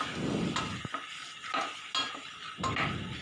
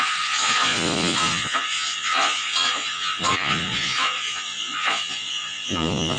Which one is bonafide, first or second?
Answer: first